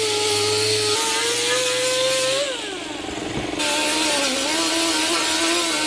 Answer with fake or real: real